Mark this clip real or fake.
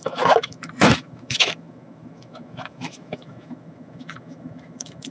fake